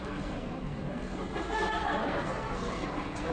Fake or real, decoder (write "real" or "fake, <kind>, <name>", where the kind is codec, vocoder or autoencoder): fake, codec, SNAC